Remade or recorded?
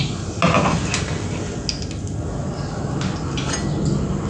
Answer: recorded